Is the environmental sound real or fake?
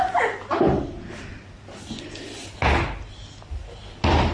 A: real